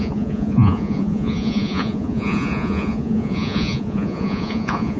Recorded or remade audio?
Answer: remade